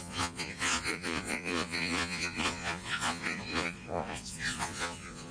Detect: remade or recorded remade